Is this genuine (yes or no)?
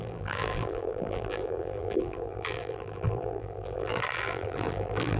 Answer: no